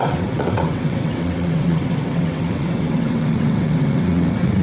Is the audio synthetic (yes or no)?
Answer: yes